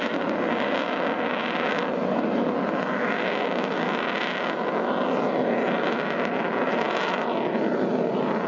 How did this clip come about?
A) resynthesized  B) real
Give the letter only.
B